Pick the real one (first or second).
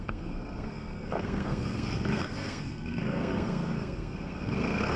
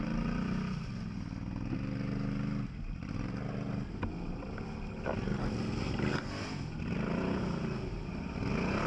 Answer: second